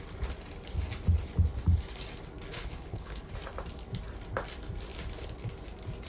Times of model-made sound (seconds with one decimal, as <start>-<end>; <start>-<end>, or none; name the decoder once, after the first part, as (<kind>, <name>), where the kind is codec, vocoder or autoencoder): 2.5-3.3 (codec, HILCodec)